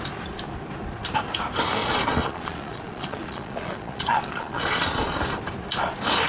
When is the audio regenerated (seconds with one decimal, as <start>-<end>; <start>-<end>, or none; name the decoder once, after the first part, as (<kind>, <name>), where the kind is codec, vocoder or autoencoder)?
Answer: 1.8-5.2 (vocoder, Vocos)